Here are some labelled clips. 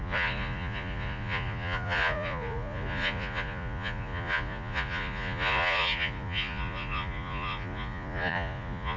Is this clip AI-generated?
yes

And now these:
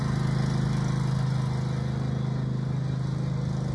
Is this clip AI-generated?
no